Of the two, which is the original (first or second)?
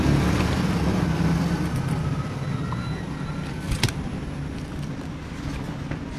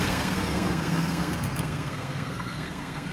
first